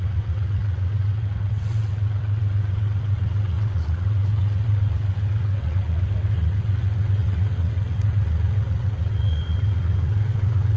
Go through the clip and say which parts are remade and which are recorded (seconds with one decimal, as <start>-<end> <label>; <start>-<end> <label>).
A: 0.0-10.8 remade